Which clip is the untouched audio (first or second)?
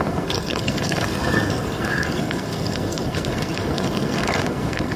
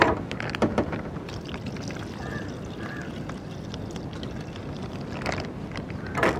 second